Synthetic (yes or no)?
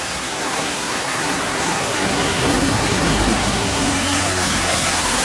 yes